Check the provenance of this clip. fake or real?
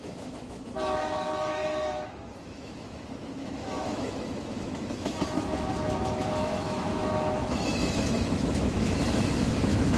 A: fake